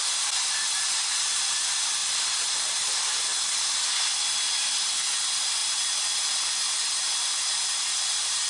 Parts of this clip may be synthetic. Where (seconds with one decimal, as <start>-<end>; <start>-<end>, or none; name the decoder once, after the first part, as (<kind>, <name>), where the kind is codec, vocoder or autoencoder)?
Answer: none